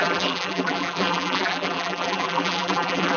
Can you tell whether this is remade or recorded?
remade